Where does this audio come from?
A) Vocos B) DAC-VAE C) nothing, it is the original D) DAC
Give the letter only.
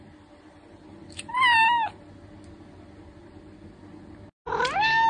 C